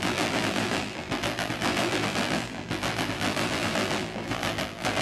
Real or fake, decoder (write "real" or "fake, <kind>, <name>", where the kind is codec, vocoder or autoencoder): fake, vocoder, BigVGAN v2